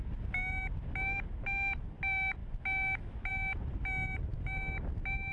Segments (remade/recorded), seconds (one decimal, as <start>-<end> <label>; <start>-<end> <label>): 0.0-5.3 recorded